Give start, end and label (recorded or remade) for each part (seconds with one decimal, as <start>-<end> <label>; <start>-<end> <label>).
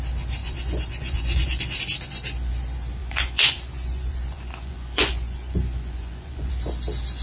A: 0.0-0.4 recorded; 0.4-1.8 remade; 1.8-3.0 recorded; 3.0-6.5 remade; 6.5-7.2 recorded